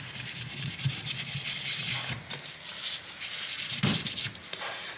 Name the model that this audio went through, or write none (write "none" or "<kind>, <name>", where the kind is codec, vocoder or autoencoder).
none